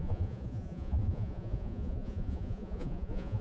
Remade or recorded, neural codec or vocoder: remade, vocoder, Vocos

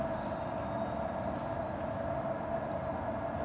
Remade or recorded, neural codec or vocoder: recorded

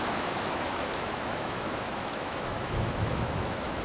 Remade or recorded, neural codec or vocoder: remade, autoencoder, DAC-VAE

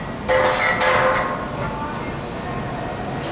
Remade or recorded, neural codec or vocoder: recorded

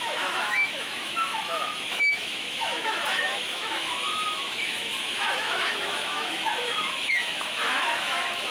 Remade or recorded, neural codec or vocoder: remade, autoencoder, DAC-VAE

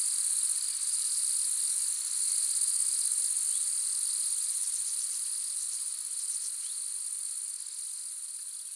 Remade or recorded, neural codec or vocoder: recorded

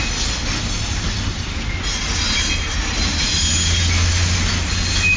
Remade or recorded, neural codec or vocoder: recorded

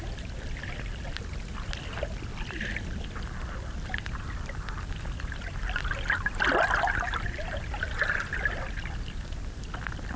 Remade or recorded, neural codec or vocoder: recorded